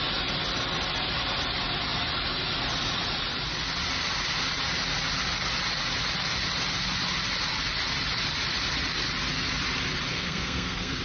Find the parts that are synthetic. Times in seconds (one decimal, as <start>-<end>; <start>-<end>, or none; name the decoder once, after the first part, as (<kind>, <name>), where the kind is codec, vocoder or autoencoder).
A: 10.1-11.0 (codec, SNAC)